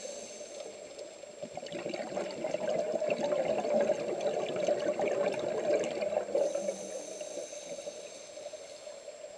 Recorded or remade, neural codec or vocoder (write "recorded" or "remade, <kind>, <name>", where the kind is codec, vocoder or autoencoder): recorded